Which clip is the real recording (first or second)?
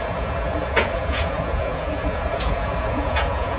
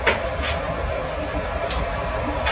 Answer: second